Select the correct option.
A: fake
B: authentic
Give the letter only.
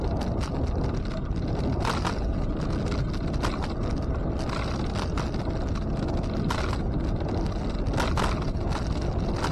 B